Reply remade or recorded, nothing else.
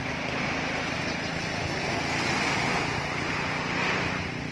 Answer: recorded